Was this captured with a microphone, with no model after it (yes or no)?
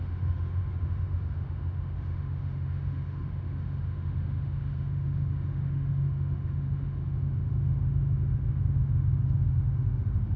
no